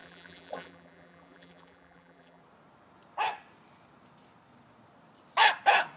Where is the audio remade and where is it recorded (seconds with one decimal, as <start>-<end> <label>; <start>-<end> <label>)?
0.0-2.4 remade; 2.4-6.0 recorded